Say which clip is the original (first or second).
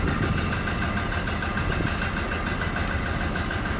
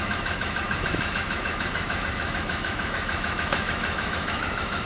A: first